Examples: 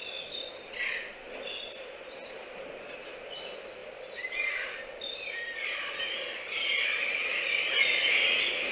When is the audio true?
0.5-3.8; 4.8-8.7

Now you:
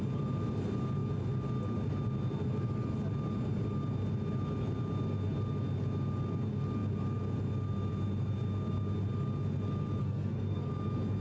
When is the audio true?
0.0-10.0; 10.7-11.2

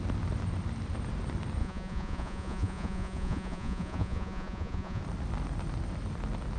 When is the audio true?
0.0-1.6; 5.0-6.6